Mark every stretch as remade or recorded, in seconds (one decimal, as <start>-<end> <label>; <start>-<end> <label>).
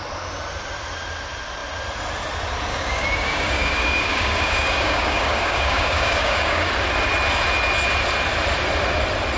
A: 0.0-2.7 recorded; 2.7-6.7 remade; 6.7-9.4 recorded